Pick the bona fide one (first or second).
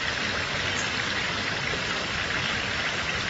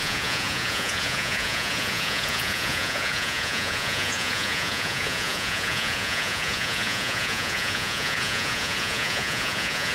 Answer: first